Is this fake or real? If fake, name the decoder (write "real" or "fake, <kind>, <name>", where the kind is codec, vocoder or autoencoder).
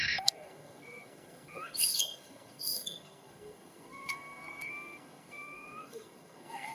fake, codec, SNAC